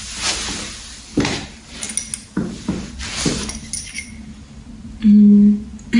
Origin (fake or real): real